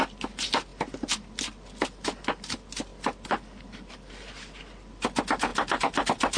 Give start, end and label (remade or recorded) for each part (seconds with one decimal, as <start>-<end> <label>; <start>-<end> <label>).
0.0-6.4 recorded